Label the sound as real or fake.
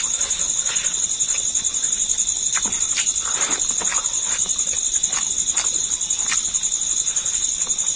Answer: real